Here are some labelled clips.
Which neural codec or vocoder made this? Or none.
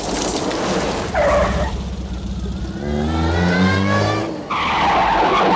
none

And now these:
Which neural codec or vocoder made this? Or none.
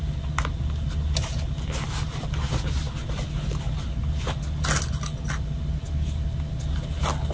none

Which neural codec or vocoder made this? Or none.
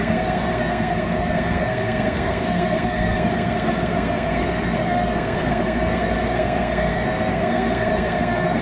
codec, SNAC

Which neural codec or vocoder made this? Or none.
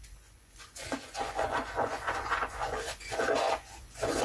vocoder, Vocos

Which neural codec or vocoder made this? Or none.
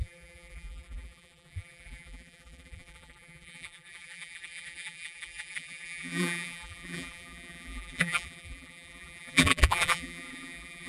vocoder, BigVGAN v2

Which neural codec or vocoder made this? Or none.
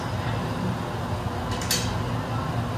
none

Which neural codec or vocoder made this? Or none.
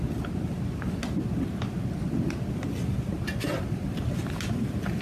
none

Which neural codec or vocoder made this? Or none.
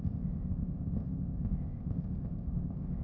codec, ZipCodec